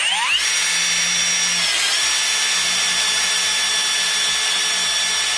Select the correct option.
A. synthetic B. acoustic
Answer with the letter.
B